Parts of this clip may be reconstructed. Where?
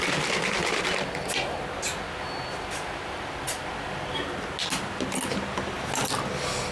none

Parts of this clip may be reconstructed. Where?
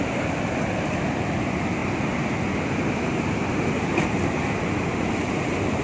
none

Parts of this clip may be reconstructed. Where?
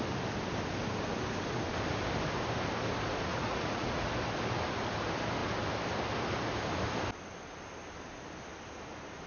3.3-4.1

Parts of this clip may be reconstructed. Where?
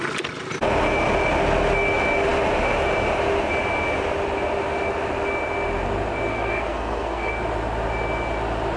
6.3-7.3